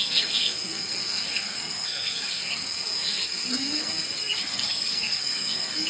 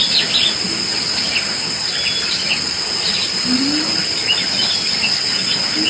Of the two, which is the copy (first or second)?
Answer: first